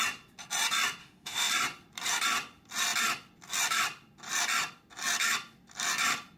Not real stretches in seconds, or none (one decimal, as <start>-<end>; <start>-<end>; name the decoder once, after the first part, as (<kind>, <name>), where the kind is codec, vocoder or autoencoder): 1.0-1.5 (autoencoder, DAC-VAE)